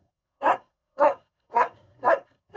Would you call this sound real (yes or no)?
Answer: no